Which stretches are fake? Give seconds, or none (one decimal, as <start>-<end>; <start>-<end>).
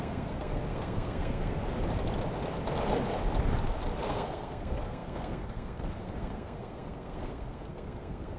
0.0-1.6; 4.1-8.4